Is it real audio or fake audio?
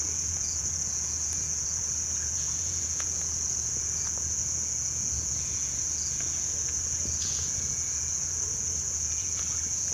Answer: fake